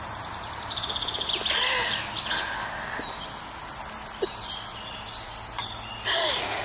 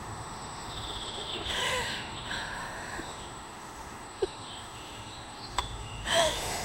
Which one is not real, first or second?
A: second